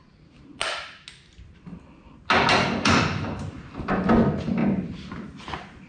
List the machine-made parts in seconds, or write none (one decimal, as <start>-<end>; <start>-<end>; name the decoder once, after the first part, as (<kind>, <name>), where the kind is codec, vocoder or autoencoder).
none